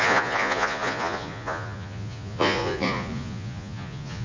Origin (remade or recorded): remade